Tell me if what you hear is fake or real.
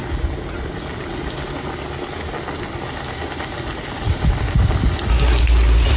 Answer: real